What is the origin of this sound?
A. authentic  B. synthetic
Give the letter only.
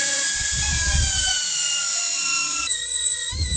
B